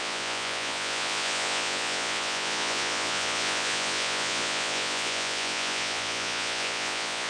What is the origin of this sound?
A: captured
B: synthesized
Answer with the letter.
B